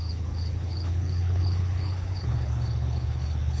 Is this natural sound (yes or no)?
no